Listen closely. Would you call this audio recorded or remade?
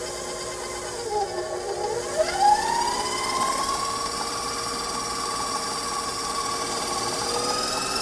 recorded